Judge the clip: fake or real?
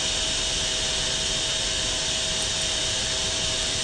real